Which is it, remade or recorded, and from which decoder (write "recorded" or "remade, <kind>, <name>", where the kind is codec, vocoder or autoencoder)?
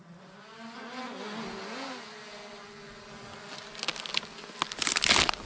recorded